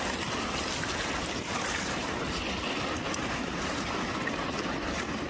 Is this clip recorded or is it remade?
recorded